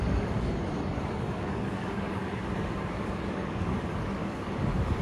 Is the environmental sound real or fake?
fake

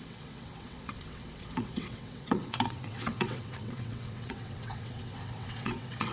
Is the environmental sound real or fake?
fake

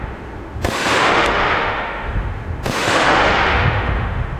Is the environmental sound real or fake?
fake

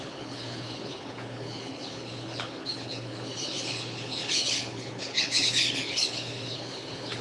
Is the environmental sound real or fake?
fake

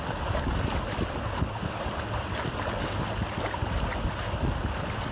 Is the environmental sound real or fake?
real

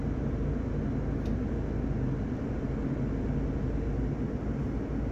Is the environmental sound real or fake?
real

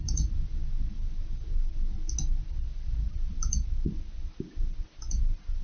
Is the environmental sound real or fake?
real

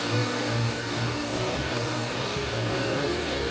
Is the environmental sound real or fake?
fake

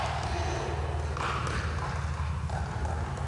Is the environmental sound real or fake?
real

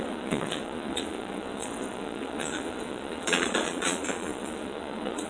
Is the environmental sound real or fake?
fake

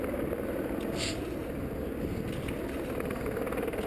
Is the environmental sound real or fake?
real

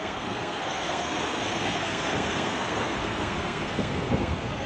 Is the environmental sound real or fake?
fake